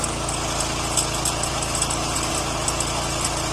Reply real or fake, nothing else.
real